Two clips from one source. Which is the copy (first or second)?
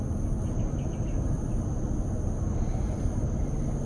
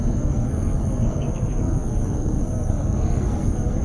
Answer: second